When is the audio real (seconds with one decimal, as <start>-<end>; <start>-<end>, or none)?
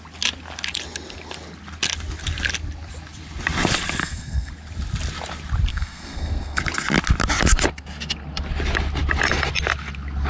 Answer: 0.0-4.0; 4.5-5.7; 6.6-10.3